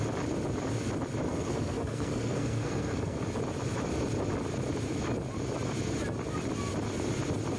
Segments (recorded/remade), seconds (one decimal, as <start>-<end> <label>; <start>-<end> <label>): 0.0-1.3 recorded; 1.3-3.2 remade; 3.2-7.6 recorded